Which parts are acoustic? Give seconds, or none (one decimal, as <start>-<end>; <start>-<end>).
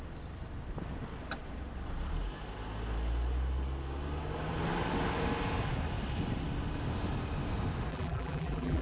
0.0-7.9